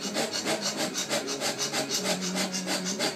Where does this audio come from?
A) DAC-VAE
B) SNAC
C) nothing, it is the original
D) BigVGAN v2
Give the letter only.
D